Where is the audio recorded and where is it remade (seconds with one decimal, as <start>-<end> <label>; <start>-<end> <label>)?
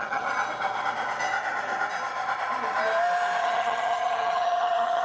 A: 0.0-0.4 remade; 0.4-3.4 recorded; 3.4-5.0 remade